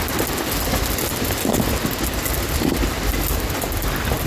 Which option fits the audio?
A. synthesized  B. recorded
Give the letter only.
B